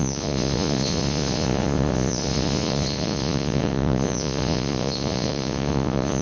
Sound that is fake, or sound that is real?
fake